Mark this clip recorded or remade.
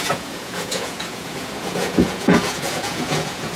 remade